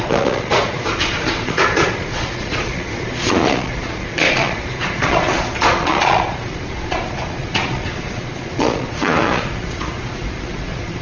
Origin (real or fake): fake